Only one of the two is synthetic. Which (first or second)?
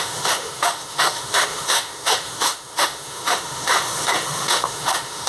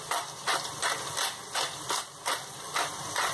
first